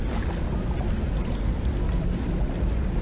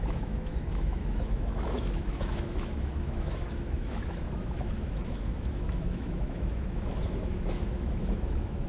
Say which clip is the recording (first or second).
first